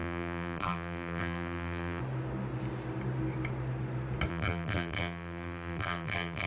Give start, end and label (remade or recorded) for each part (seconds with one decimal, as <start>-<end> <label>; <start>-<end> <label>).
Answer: 0.0-2.0 remade; 2.0-4.3 recorded; 4.3-6.5 remade